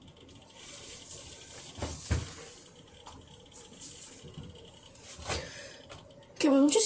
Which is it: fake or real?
real